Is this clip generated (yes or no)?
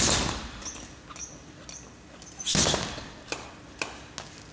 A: no